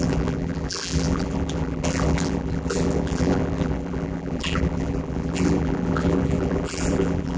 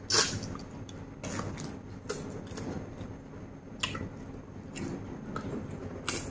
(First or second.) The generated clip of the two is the first